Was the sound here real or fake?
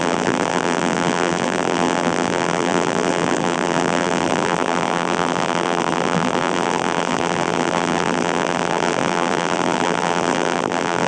fake